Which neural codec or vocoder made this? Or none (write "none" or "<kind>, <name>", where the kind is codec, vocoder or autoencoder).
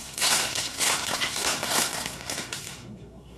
codec, SNAC